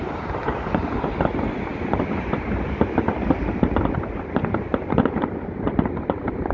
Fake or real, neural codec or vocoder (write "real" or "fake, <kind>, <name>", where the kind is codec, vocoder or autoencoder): real